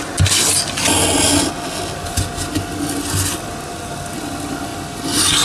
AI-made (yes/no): no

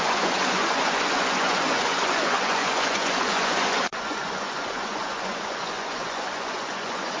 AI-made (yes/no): yes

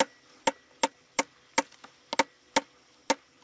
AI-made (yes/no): no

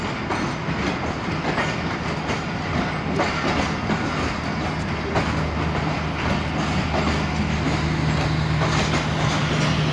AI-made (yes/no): no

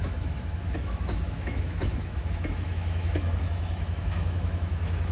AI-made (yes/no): yes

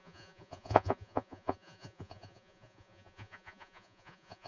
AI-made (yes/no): yes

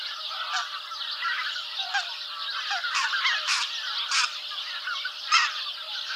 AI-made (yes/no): no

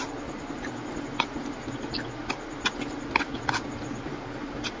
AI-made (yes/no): no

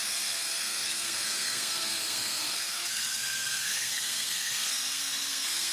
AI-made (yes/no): yes